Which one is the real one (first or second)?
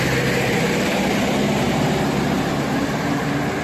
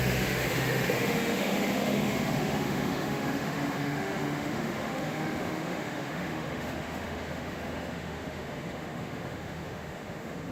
first